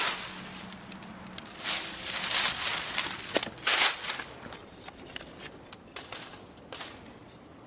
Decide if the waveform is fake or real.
real